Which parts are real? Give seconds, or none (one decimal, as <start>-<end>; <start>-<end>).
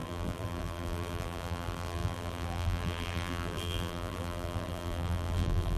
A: none